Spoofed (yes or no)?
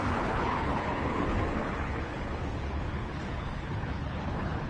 yes